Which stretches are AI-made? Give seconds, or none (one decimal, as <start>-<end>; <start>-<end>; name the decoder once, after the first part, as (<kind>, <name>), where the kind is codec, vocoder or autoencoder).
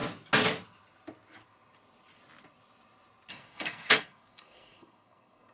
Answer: 3.3-5.5 (codec, SNAC)